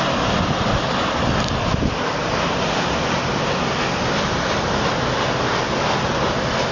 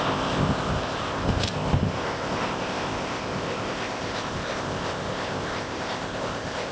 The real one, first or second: first